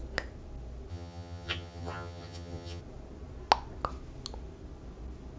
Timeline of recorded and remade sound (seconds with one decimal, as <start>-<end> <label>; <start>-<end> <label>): 0.0-0.9 recorded; 0.9-2.8 remade; 2.8-5.4 recorded